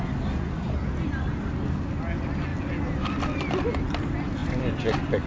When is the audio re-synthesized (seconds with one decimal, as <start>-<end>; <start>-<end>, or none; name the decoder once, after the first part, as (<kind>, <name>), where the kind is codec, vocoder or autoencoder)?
4.4-5.3 (vocoder, BigVGAN v2)